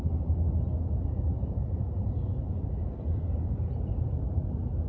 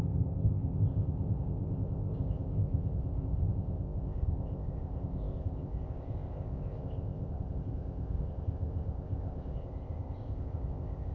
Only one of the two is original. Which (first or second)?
first